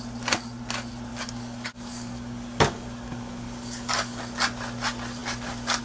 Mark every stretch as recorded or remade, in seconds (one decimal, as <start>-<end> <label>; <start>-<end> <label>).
0.0-1.1 recorded; 1.1-4.2 remade; 4.2-5.8 recorded